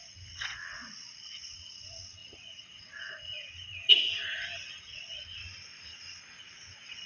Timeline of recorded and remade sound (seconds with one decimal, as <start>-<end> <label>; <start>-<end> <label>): 0.0-4.1 remade; 4.1-4.8 recorded; 4.8-5.4 remade; 5.4-6.4 recorded; 6.4-7.1 remade